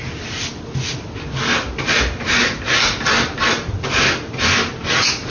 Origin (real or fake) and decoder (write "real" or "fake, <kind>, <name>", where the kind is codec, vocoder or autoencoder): real